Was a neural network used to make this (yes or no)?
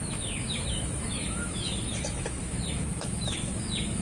yes